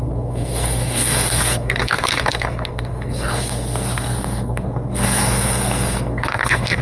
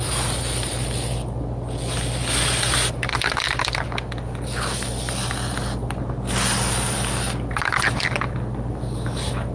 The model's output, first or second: first